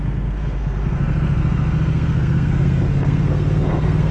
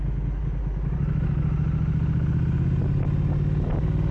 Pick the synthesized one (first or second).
first